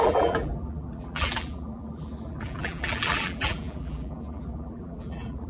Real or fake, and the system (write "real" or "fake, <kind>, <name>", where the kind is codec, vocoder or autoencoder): fake, vocoder, BigVGAN v2